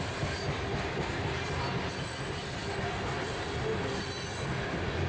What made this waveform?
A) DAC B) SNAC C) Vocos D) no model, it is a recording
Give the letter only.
D